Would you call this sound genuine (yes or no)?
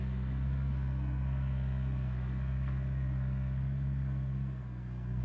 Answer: no